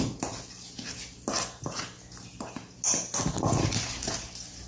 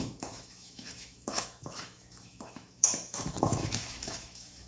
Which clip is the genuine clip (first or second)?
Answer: first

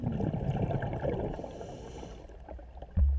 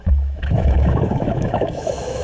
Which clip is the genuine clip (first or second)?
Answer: first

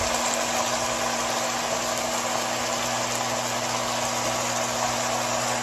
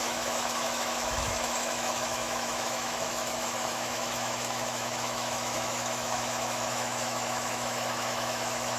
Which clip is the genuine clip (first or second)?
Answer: first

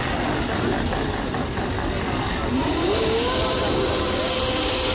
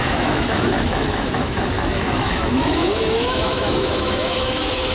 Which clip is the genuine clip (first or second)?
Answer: first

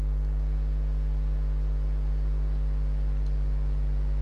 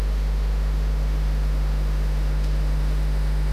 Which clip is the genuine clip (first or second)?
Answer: first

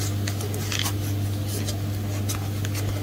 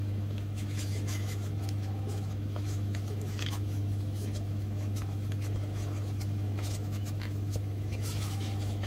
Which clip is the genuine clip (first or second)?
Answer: first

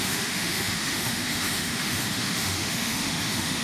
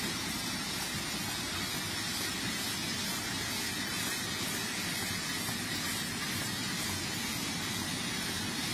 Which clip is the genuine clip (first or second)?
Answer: second